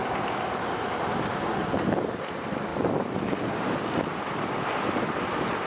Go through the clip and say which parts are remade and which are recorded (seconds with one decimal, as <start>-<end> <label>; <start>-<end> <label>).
0.0-5.7 recorded